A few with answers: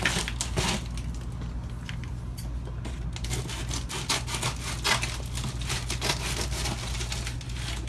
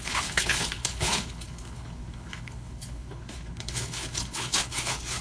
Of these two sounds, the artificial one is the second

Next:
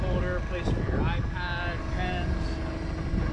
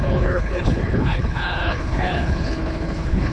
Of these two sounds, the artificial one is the second